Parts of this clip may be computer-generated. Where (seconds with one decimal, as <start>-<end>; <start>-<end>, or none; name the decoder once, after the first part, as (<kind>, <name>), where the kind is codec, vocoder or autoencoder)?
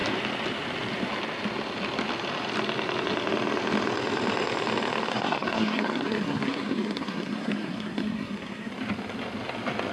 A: 5.1-8.7 (codec, SNAC)